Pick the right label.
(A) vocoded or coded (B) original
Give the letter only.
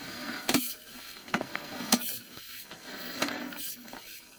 A